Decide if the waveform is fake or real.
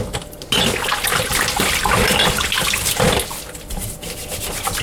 real